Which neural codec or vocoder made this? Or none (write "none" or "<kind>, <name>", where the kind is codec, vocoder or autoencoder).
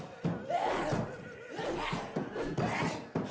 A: none